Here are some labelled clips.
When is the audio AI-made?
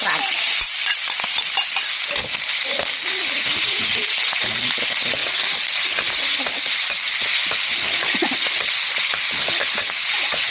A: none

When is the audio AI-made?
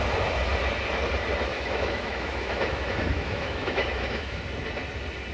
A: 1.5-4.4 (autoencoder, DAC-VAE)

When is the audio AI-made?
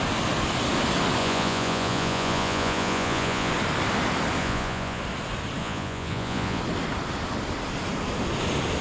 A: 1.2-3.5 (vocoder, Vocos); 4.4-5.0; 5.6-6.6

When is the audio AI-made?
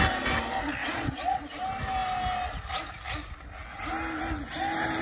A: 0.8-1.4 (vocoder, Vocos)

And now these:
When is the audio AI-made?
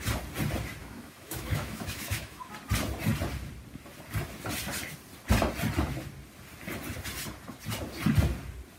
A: 0.8-2.5 (autoencoder, DAC-VAE)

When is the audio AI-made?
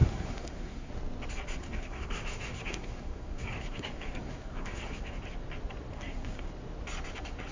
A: 0.0-0.9 (codec, SNAC); 1.6-5.2; 5.9-6.5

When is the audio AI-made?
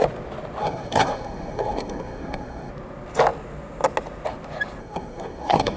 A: 0.6-2.7 (codec, SNAC); 4.8-5.8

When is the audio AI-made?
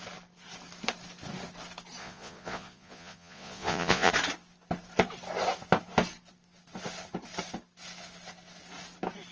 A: 2.0-4.1 (vocoder, Vocos)